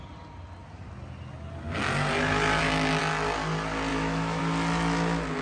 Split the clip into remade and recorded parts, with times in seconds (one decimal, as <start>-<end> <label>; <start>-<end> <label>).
0.0-3.9 recorded; 3.9-4.4 remade; 4.4-5.4 recorded